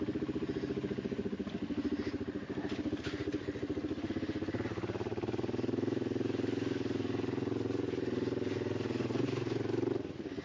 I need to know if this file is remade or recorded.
recorded